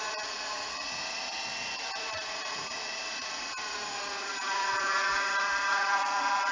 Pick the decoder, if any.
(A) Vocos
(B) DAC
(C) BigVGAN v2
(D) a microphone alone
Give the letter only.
A